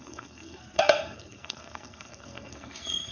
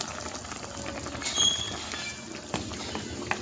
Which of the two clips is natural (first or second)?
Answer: second